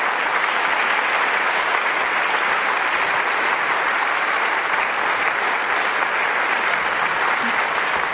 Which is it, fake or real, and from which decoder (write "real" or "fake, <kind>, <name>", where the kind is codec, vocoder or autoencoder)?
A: real